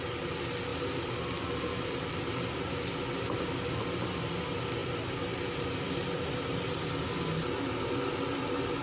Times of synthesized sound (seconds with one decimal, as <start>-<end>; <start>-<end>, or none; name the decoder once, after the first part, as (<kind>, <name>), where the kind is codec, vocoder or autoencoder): none